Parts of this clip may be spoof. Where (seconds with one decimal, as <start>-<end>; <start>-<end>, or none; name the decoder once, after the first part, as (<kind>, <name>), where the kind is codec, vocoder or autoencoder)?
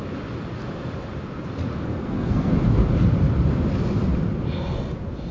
1.9-2.5 (codec, SNAC)